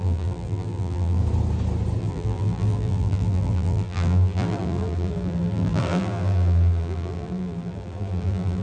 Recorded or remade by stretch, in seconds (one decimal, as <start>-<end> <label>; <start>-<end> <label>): 0.0-1.2 remade; 1.2-2.0 recorded; 2.0-8.6 remade

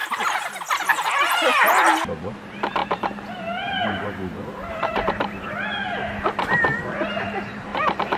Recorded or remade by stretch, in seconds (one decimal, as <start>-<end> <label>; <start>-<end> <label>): 0.0-2.8 recorded; 2.8-5.5 remade; 5.5-7.7 recorded; 7.7-8.2 remade